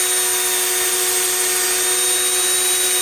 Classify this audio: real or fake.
real